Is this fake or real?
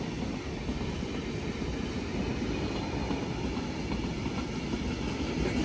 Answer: real